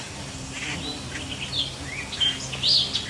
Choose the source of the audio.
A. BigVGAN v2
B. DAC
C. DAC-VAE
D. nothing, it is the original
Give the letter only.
D